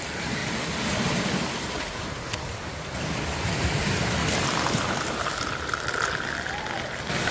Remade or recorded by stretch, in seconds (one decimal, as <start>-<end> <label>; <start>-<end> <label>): 0.0-0.4 remade; 0.4-1.3 recorded; 1.3-4.2 remade; 4.2-7.3 recorded